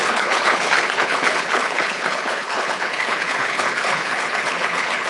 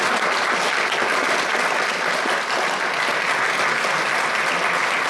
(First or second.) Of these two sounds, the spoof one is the first